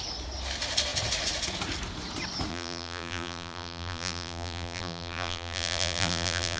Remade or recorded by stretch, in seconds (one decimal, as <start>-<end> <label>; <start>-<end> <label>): 0.0-2.5 recorded; 2.5-6.6 remade